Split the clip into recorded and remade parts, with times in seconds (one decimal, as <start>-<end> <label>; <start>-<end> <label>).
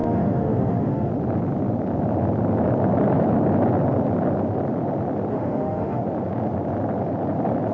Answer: 0.0-1.1 remade; 1.1-5.3 recorded; 5.3-6.0 remade; 6.0-7.7 recorded